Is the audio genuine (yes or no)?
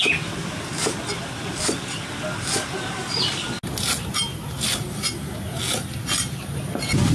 yes